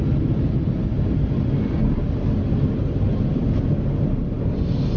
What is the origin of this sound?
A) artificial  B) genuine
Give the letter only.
B